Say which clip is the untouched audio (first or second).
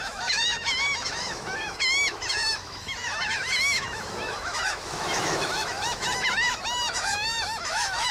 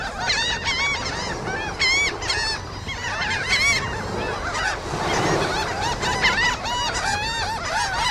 second